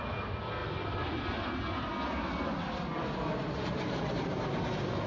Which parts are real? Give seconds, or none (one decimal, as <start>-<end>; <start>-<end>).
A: 0.0-5.1